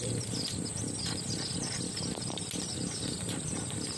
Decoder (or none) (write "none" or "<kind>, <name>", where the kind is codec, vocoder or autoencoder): none